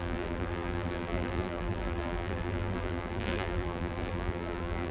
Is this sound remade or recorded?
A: remade